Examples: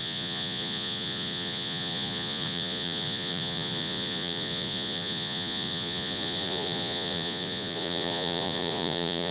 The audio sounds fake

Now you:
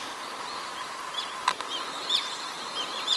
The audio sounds real